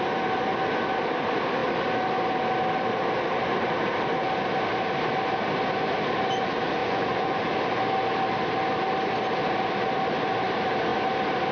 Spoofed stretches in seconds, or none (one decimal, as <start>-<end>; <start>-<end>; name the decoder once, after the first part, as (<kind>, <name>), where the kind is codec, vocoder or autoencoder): 6.8-7.4 (vocoder, Vocos)